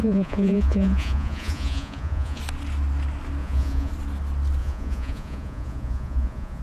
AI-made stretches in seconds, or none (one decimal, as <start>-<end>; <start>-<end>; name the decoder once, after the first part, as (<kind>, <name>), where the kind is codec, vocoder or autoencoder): 0.0-2.4 (vocoder, Vocos); 3.4-3.9; 4.6-6.6